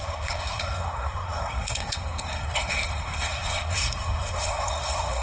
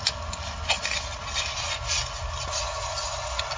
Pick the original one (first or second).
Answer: second